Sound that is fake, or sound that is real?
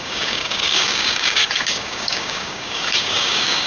fake